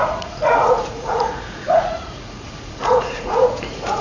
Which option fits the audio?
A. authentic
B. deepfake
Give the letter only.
B